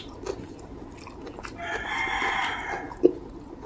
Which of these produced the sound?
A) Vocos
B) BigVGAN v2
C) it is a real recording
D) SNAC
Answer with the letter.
C